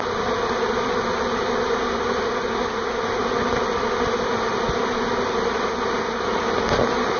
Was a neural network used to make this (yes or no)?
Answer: no